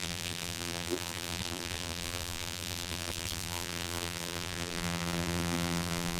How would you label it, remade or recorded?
remade